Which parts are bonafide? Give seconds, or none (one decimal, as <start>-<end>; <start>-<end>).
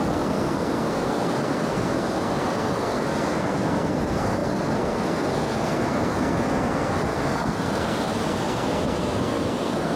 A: none